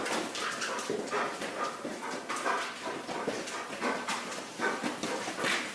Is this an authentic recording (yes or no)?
yes